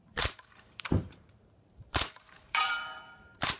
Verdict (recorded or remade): remade